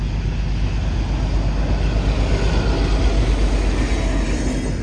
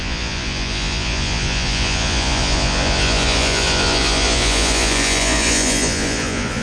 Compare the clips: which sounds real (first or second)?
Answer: first